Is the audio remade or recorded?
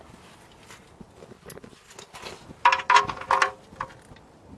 recorded